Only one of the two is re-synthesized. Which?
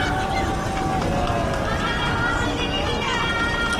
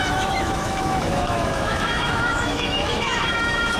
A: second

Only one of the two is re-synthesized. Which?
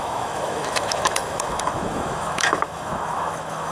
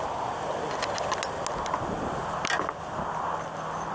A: first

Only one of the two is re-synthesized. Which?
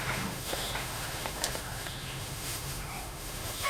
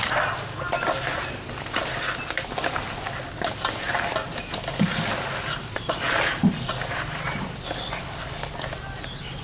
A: first